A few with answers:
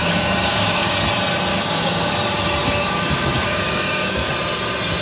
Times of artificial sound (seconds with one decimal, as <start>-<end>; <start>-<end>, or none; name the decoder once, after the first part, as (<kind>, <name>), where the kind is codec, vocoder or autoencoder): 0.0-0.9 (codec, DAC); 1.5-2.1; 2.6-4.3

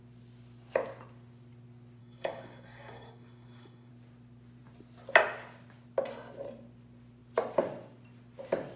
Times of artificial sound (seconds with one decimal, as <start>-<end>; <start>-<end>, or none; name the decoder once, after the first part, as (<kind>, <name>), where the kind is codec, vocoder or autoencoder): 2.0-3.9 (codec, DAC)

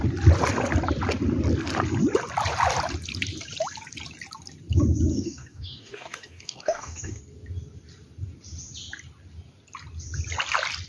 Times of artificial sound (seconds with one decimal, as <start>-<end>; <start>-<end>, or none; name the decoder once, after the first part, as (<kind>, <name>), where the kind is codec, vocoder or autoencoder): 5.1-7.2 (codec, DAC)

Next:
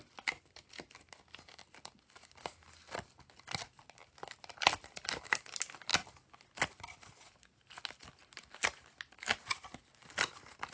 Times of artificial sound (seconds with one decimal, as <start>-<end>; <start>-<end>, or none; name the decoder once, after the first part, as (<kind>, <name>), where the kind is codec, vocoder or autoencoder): none

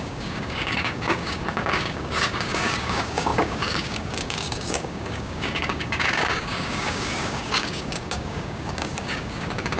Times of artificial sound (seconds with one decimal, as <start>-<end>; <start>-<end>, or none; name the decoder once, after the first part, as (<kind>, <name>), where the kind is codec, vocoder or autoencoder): 0.0-9.8 (codec, DAC)

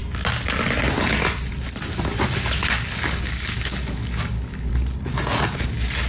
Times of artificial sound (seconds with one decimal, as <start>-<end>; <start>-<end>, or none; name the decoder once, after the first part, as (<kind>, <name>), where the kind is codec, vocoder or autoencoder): 2.6-4.7 (codec, DAC)